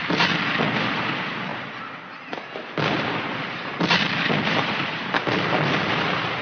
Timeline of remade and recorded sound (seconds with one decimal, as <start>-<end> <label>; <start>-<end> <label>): 0.0-6.4 recorded